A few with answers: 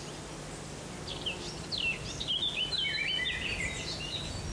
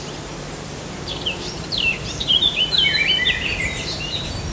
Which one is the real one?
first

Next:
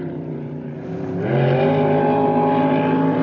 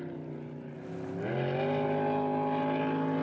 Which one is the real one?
second